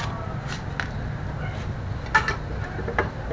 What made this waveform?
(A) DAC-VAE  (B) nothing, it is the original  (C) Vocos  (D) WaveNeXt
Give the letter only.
B